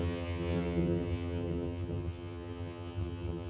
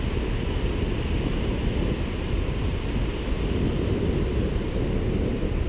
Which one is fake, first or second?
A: first